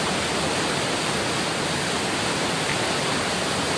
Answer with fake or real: real